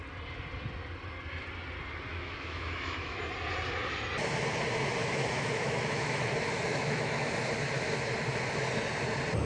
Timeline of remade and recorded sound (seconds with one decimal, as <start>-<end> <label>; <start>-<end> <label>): 0.0-2.1 recorded; 2.1-3.2 remade; 3.2-5.0 recorded; 5.0-6.2 remade; 6.2-6.7 recorded; 6.7-7.3 remade; 7.3-9.5 recorded